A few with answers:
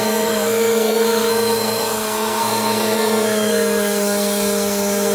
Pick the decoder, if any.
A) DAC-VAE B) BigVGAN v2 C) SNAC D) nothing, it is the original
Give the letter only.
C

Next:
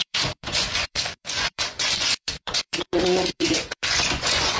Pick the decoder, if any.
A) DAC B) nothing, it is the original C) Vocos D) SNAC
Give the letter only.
C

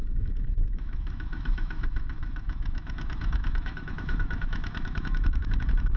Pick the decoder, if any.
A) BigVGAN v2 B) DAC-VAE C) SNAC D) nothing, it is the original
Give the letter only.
B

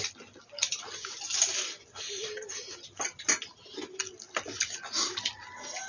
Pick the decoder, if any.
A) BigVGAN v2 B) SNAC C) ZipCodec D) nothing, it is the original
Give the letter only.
D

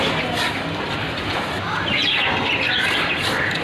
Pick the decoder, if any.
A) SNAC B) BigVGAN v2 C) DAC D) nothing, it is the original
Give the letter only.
D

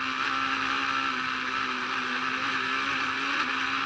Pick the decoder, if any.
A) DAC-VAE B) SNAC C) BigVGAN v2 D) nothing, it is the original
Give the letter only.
D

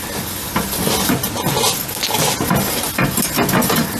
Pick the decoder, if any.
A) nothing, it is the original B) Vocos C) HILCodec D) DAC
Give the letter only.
A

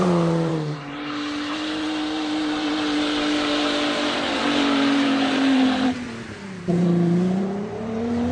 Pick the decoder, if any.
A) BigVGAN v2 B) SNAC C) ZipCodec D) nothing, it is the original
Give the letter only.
A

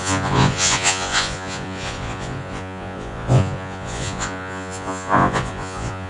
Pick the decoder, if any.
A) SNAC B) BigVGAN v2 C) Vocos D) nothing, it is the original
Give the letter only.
C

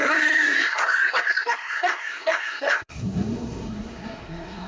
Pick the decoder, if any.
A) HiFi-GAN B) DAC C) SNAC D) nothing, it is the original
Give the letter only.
C